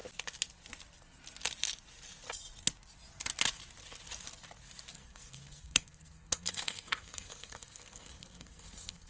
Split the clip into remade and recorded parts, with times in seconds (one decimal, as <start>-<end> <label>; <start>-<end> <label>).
0.0-4.9 recorded; 4.9-9.1 remade